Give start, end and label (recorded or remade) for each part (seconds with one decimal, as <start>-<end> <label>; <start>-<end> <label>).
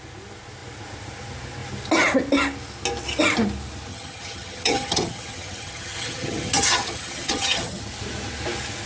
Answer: 0.0-3.9 recorded; 3.9-7.8 remade; 7.8-8.9 recorded